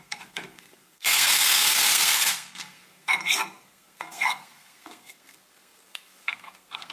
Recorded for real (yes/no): no